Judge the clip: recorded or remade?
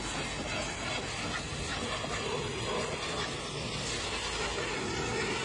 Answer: recorded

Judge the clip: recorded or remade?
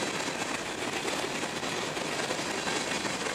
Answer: recorded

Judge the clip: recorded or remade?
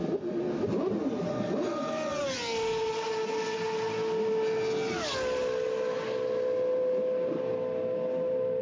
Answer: recorded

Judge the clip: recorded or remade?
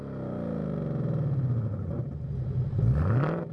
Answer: recorded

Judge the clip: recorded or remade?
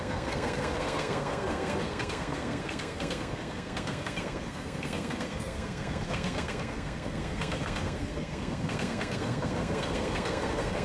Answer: remade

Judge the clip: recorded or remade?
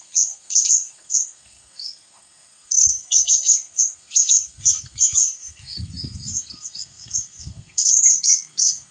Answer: remade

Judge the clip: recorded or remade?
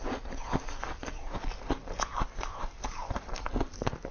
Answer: recorded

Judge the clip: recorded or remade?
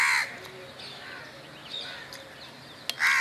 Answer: recorded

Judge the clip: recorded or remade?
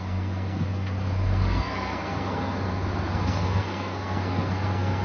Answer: remade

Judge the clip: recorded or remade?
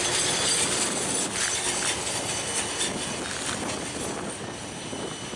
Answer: recorded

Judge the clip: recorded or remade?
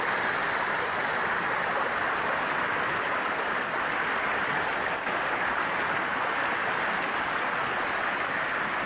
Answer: recorded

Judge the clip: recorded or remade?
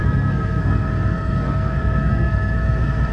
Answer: remade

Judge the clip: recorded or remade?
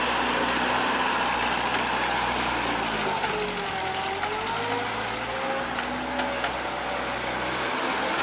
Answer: recorded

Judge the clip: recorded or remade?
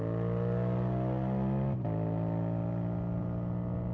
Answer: recorded